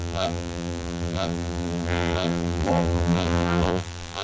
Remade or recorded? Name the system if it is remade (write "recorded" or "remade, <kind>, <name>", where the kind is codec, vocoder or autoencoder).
remade, vocoder, BigVGAN v2